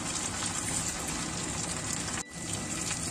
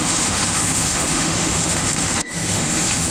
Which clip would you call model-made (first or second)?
second